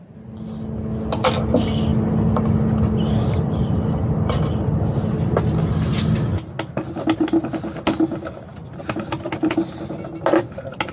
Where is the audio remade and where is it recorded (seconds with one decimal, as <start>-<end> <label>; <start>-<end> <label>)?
0.0-10.9 recorded